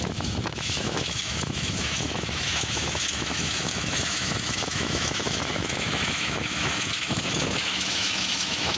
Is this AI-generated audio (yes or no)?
yes